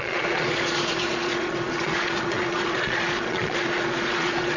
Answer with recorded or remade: remade